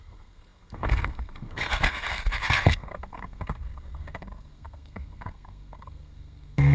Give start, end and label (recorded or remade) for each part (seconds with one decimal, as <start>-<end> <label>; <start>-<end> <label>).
0.0-6.7 remade